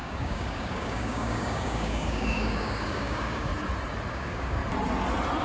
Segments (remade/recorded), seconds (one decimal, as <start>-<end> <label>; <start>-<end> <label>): 0.0-3.5 remade; 3.5-4.1 recorded; 4.1-4.6 remade; 4.6-5.4 recorded